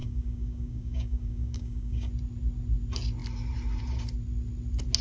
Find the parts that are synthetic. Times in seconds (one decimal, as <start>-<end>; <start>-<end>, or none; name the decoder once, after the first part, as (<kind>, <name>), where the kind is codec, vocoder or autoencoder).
0.0-2.1 (codec, DAC)